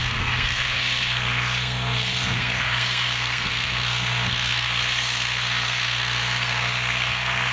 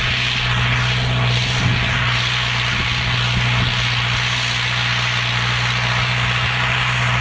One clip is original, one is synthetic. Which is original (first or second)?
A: second